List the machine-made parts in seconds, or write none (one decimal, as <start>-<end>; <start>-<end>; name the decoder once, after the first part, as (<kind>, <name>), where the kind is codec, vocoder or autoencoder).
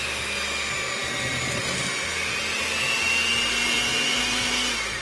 none